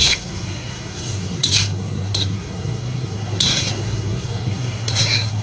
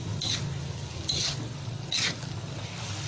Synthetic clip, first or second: first